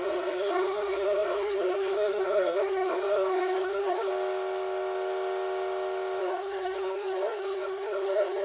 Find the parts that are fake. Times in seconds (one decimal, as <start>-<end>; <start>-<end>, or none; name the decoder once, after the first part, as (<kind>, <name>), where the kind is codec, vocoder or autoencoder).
0.0-4.1 (codec, SNAC); 6.2-8.4